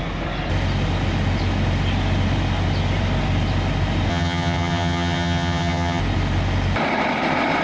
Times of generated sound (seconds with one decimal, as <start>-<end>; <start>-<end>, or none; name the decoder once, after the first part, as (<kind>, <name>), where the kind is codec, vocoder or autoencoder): 4.1-6.0 (vocoder, HiFi-GAN)